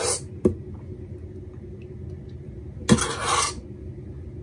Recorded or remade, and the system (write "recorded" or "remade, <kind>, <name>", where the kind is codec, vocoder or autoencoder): recorded